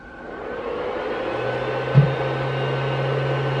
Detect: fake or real real